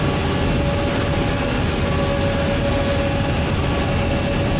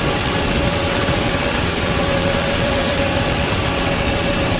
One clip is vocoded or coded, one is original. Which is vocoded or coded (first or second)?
second